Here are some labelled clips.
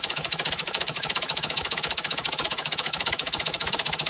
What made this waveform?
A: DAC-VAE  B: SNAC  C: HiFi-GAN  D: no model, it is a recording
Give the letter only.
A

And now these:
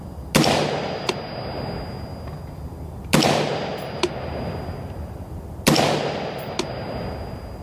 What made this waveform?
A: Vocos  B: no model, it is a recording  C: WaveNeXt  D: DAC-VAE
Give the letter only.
B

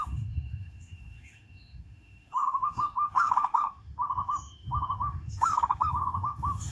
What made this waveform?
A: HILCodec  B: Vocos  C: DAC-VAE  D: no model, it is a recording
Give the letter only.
C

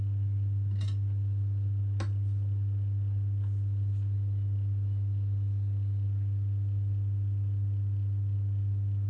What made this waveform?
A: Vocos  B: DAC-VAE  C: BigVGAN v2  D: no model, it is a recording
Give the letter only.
D